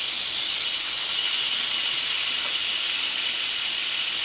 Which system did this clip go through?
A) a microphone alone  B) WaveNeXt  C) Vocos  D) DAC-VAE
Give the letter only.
A